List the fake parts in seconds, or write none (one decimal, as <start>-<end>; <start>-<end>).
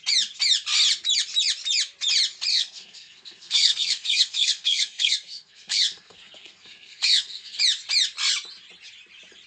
2.5-7.6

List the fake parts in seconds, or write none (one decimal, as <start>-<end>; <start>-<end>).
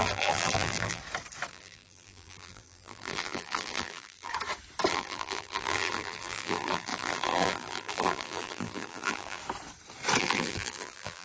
0.0-1.0; 1.5-4.3; 4.9-9.4; 10.2-11.2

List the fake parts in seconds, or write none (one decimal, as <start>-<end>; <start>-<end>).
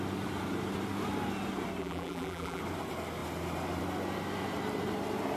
1.8-2.6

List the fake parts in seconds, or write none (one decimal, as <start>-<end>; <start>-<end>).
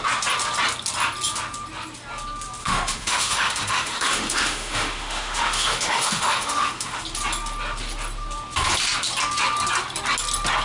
2.6-7.0